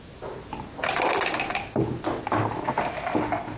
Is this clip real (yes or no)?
yes